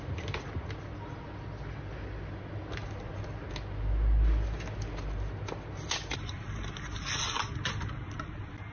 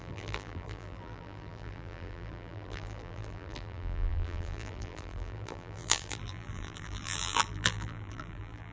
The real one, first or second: first